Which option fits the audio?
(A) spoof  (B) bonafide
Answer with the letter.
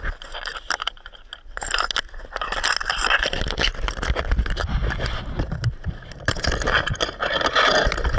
B